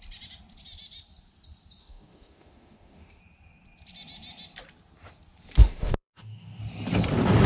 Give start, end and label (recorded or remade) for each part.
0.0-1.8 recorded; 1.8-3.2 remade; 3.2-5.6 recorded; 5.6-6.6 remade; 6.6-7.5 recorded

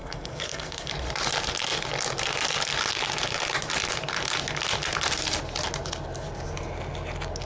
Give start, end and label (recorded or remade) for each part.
0.0-0.9 remade; 0.9-7.5 recorded

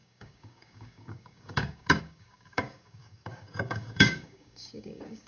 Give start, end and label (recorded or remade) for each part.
0.0-5.3 remade